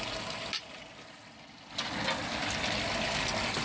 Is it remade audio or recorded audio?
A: recorded